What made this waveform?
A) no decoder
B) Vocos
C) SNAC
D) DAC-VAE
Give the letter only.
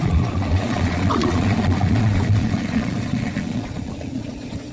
B